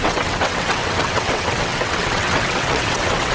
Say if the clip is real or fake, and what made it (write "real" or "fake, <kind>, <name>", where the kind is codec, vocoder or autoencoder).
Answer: fake, vocoder, WaveNeXt